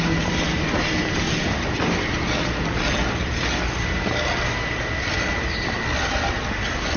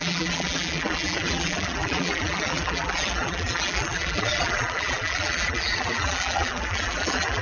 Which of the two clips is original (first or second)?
first